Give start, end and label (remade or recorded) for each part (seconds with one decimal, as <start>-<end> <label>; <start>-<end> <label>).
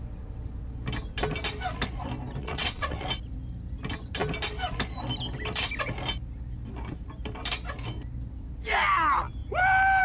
0.0-2.4 recorded; 2.4-3.1 remade; 3.1-10.0 recorded